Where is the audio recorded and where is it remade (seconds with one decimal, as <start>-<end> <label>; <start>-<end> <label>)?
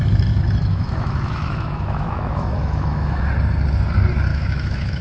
0.0-0.7 recorded; 0.7-3.2 remade; 3.2-4.3 recorded; 4.3-5.0 remade